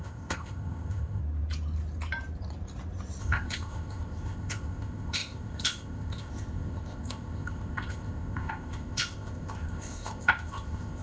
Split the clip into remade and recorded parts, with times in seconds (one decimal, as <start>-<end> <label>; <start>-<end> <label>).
0.0-1.2 remade; 1.2-3.2 recorded; 3.2-11.0 remade